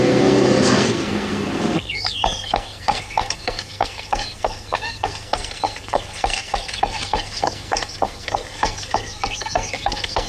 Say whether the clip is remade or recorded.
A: remade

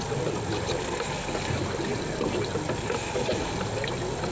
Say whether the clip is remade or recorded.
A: recorded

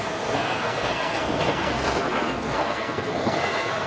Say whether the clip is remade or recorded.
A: remade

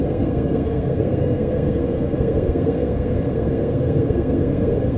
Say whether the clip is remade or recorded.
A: remade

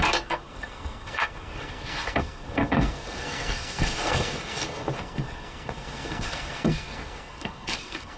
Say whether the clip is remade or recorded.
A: remade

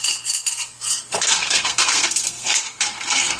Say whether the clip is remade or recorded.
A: remade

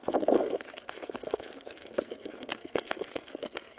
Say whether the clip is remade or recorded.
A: remade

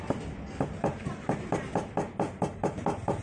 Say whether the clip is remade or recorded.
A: recorded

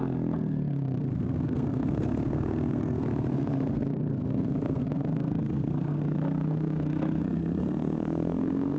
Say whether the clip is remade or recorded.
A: remade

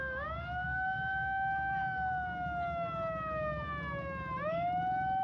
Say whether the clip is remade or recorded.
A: recorded